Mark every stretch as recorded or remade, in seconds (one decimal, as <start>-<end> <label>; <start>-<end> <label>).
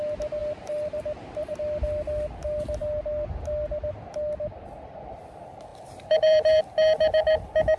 0.0-0.4 recorded; 0.4-1.5 remade; 1.5-5.7 recorded; 5.7-6.6 remade; 6.6-7.8 recorded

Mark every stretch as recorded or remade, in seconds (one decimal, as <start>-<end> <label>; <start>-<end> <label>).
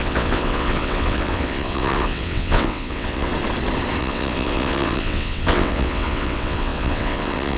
0.0-3.3 remade; 3.3-4.0 recorded; 4.0-7.6 remade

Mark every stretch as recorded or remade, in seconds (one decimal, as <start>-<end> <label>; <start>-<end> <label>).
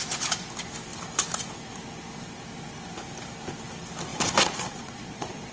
0.0-4.1 recorded; 4.1-5.5 remade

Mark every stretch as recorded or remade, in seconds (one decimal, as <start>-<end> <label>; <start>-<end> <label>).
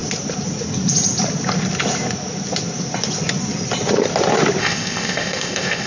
0.0-4.6 recorded; 4.6-5.9 remade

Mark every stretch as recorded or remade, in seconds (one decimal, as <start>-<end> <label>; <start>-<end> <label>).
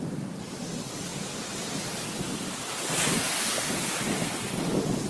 0.0-5.1 recorded